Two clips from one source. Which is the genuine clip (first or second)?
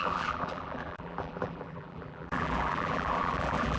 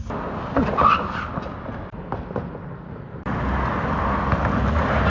second